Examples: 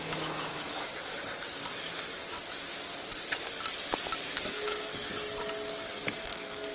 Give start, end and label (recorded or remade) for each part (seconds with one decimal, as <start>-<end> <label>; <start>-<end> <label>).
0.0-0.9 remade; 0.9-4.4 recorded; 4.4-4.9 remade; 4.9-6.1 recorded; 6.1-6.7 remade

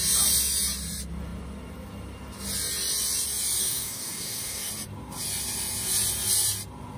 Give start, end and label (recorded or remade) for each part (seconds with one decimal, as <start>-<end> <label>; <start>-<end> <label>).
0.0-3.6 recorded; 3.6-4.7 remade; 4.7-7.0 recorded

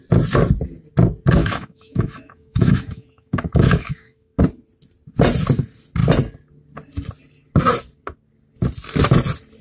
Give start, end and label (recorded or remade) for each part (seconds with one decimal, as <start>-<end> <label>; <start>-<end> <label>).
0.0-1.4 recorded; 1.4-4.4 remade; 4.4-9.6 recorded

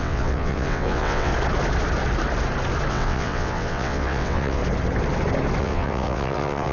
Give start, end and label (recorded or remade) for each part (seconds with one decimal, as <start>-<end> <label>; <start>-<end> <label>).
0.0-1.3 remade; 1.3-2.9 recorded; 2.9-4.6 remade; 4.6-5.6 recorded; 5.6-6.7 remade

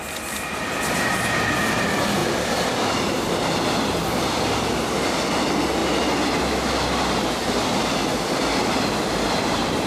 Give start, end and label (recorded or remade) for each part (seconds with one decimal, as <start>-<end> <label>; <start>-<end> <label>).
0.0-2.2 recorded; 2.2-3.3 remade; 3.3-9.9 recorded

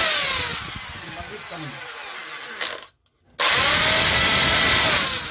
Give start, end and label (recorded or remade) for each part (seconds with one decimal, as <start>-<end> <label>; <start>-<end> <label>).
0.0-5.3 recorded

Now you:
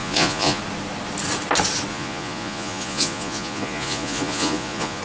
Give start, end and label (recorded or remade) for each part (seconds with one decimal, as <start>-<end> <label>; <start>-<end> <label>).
0.0-0.6 remade; 0.6-1.9 recorded; 1.9-5.0 remade